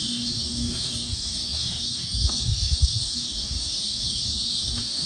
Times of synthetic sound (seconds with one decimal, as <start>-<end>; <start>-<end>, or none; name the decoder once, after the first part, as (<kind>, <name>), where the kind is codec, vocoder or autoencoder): 0.0-5.1 (codec, DAC)